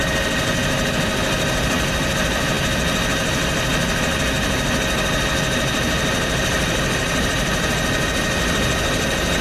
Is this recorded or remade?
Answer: recorded